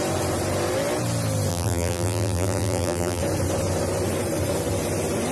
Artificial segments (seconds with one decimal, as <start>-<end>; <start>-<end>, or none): 1.5-3.2